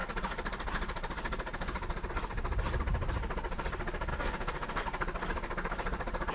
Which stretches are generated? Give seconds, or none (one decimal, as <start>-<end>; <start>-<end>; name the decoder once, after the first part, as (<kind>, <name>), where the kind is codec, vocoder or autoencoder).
4.1-4.8 (codec, SNAC)